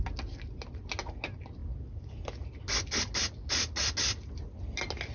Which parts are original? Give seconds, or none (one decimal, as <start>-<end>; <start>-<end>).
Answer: 0.0-5.1